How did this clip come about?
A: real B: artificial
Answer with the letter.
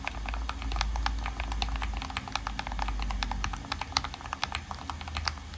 A